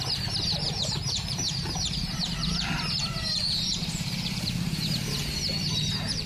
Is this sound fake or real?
fake